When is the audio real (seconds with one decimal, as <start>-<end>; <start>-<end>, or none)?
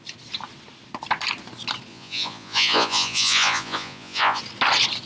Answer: 0.0-1.9; 4.4-5.1